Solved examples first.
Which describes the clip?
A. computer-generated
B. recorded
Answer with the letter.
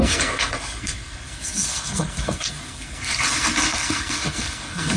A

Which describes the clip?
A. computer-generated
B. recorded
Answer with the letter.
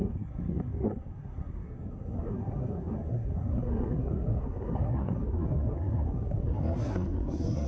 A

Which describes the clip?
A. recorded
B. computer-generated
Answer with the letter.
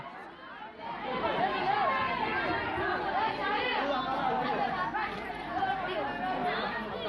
A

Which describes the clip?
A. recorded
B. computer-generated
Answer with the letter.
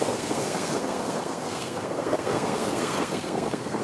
B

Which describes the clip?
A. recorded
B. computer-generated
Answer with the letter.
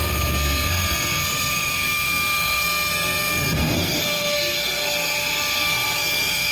B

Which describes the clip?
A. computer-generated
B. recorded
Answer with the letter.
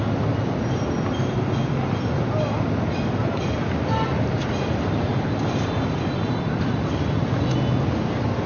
B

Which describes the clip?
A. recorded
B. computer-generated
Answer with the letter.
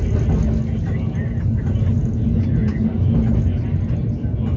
A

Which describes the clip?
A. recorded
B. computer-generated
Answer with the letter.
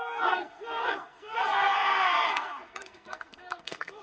B